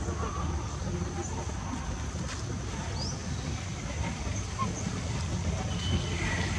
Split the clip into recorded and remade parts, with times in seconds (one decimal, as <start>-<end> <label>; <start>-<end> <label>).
0.0-3.2 recorded; 3.2-6.6 remade